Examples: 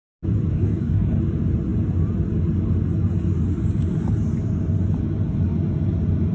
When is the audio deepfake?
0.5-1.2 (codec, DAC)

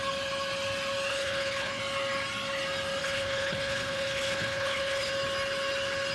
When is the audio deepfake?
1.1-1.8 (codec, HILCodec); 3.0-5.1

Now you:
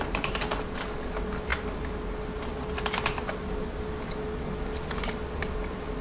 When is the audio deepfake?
none

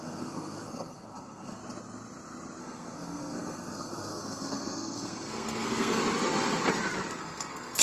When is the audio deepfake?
0.0-1.6 (codec, SNAC); 2.6-6.0; 7.2-7.8